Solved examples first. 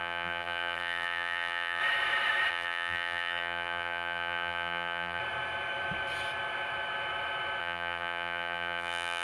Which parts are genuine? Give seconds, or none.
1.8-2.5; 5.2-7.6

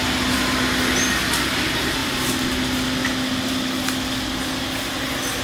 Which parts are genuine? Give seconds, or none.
0.0-5.4